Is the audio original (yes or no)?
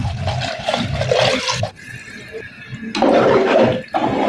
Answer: yes